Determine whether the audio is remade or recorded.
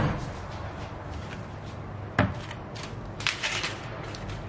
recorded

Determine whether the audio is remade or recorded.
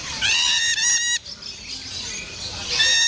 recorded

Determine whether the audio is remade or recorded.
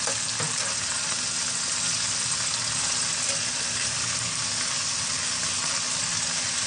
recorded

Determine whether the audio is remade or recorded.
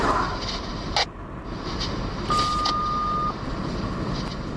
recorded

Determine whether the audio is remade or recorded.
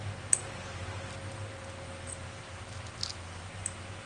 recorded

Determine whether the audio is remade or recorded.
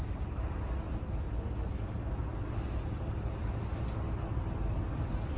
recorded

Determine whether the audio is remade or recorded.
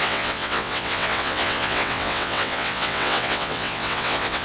remade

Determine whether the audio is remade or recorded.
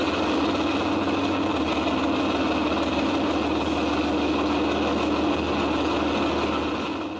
recorded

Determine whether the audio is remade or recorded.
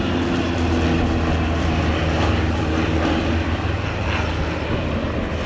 recorded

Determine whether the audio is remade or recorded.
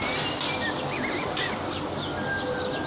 recorded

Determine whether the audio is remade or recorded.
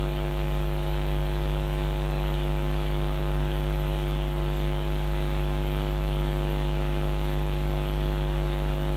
remade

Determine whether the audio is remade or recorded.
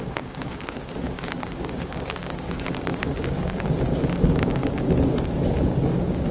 remade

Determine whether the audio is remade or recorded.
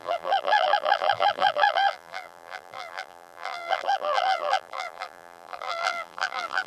remade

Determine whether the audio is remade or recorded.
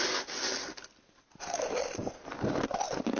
recorded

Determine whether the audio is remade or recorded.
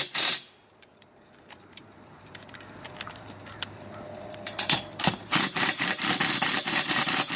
remade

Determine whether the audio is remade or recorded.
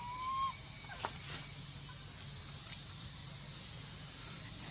recorded